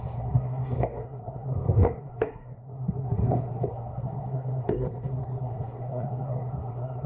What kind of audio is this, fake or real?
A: fake